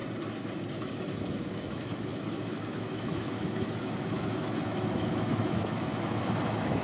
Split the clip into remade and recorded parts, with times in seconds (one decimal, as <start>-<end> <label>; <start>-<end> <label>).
0.0-0.7 recorded; 0.7-6.8 remade